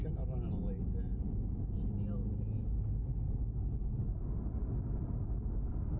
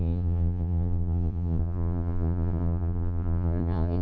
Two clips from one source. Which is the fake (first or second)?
second